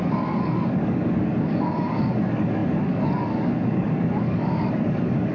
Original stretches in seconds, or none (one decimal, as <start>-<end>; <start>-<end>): none